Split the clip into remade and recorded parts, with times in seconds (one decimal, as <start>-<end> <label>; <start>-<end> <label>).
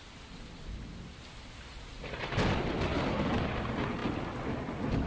0.0-5.1 recorded